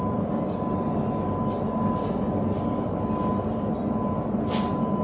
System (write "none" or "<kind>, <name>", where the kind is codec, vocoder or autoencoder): none